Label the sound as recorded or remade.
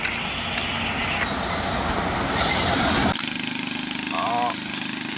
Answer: recorded